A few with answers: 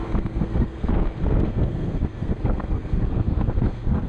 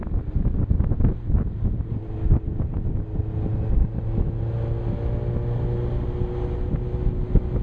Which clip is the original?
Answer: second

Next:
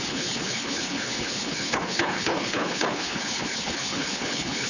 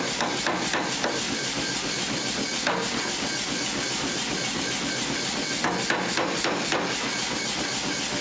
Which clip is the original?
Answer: second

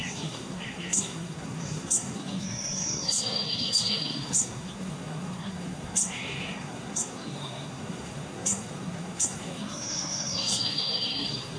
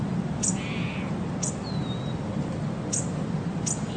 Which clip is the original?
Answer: second